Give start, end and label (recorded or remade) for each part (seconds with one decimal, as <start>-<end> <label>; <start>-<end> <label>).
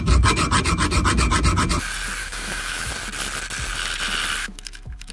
0.0-2.2 recorded; 2.2-2.9 remade; 2.9-4.4 recorded; 4.4-5.1 remade